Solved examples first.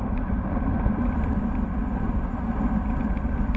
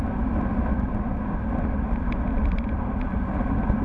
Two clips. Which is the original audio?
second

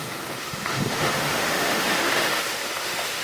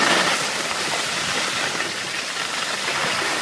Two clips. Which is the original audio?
second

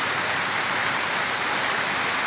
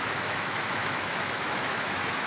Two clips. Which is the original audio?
first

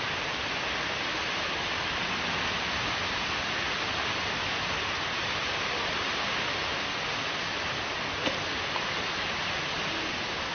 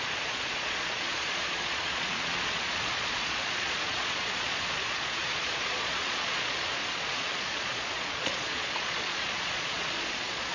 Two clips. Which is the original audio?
first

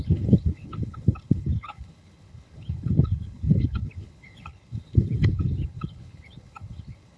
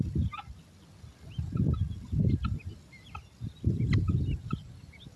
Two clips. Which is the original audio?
second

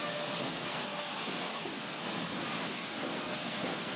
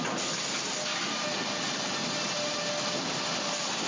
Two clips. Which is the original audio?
second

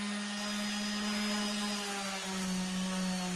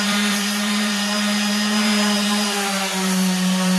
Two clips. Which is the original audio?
first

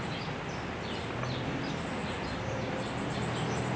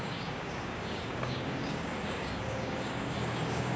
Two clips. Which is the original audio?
first